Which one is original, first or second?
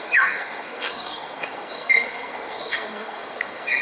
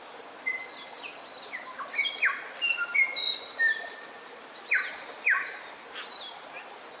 second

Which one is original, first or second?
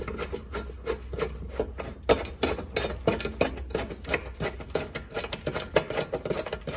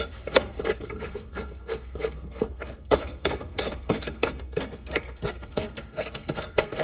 first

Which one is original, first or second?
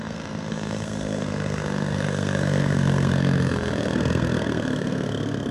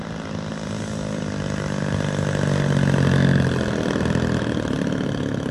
second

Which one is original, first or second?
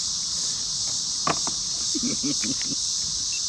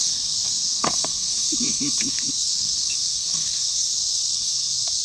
first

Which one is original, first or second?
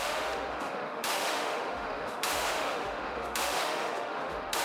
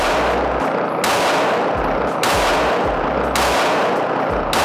second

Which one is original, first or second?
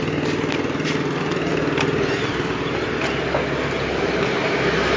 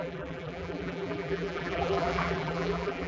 first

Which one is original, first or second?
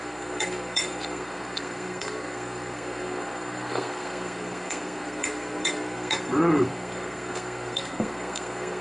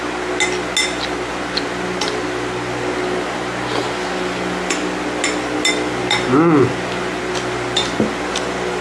second